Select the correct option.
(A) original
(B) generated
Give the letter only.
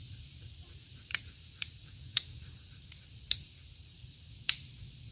B